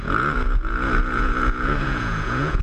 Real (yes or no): no